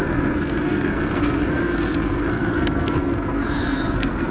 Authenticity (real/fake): fake